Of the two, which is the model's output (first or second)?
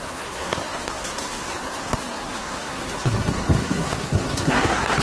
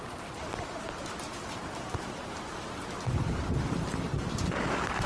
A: first